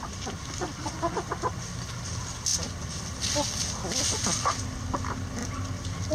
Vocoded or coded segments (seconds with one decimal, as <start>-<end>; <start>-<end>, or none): none